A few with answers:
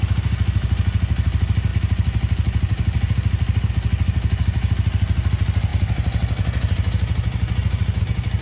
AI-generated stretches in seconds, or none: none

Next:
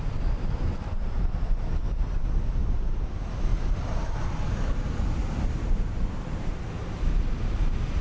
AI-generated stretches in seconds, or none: 0.0-8.0 (vocoder, BigVGAN v2)

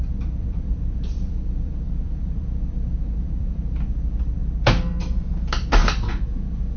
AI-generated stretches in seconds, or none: 0.0-4.4 (vocoder, BigVGAN v2); 5.0-5.8

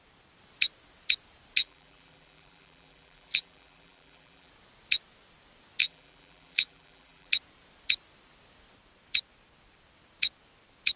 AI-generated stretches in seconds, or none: 1.6-4.5 (vocoder, BigVGAN v2); 5.8-7.3

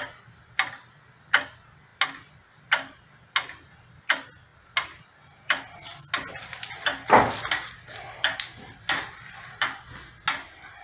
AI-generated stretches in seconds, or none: none

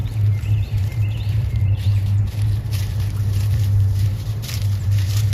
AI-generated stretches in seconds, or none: 0.0-5.3 (vocoder, BigVGAN v2)

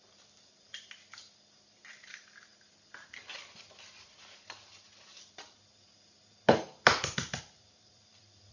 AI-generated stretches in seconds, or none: 0.0-2.5 (vocoder, BigVGAN v2); 7.4-8.5

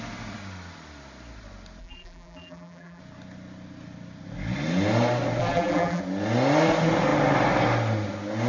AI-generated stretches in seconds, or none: 1.8-3.0 (vocoder, BigVGAN v2); 5.4-6.0